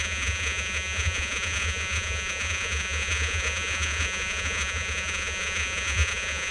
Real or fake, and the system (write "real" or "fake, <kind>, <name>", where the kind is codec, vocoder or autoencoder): fake, vocoder, Vocos